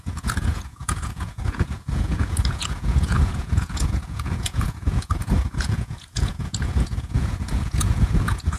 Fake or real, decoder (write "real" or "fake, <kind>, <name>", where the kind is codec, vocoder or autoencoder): fake, vocoder, Vocos